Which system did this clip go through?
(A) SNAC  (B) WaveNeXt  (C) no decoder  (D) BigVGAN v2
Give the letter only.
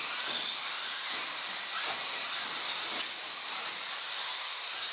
C